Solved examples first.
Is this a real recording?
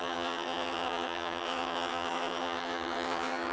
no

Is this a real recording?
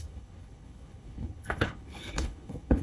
no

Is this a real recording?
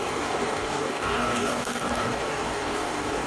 no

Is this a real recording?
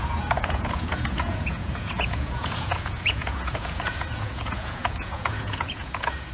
no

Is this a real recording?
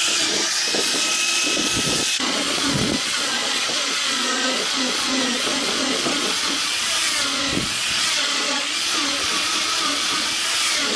no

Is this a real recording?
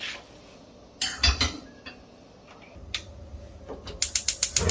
yes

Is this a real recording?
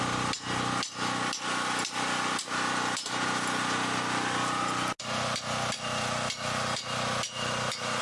yes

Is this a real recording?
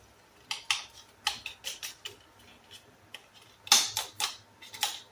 yes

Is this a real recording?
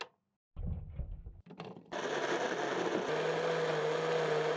yes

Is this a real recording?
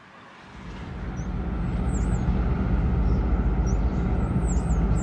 yes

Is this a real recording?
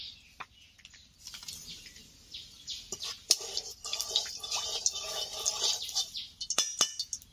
yes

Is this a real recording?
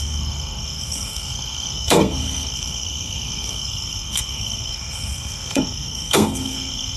no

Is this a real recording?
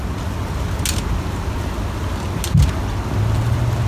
yes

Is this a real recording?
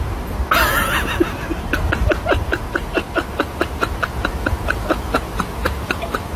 yes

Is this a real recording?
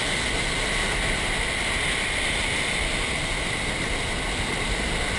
yes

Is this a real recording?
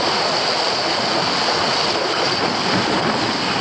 yes